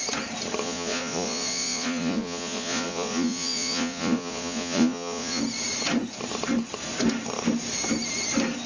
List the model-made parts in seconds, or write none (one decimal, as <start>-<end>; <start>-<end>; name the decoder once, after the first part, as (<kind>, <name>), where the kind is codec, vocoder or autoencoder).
0.6-5.4 (vocoder, Vocos)